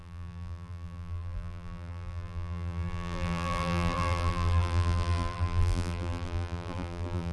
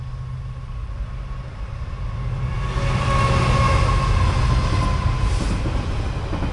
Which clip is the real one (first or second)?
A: second